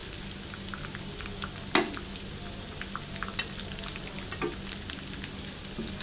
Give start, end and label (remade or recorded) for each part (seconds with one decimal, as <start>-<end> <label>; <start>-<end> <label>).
0.0-6.0 recorded

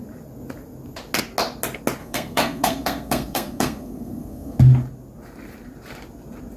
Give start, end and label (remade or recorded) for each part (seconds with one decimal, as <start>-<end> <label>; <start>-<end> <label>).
0.0-2.0 recorded; 2.0-4.6 remade; 4.6-6.6 recorded